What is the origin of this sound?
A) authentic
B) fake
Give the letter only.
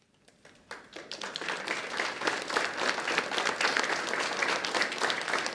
A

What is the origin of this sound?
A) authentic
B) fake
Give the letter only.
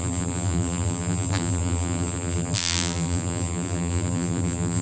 B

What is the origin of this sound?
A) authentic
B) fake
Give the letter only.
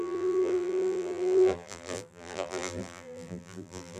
B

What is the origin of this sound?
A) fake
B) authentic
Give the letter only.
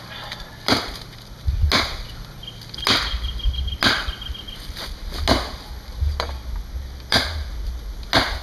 B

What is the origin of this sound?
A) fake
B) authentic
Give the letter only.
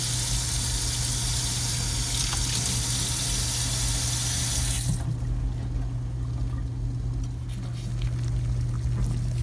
B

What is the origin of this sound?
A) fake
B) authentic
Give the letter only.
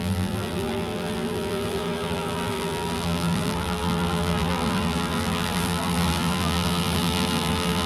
A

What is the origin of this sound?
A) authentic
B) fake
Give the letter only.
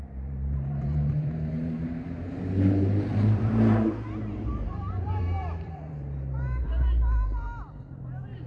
B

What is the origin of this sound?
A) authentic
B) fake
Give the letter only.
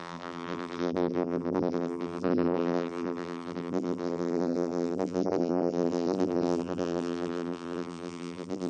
B